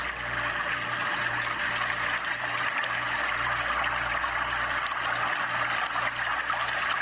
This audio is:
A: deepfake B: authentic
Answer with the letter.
B